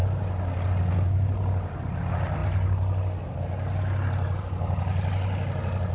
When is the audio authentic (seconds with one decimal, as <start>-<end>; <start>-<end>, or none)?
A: 0.0-5.9